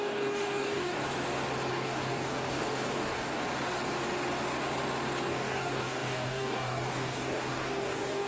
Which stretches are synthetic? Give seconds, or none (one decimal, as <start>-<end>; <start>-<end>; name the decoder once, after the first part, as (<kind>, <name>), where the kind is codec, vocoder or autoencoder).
0.0-1.0 (codec, DAC); 1.7-3.4; 5.3-8.3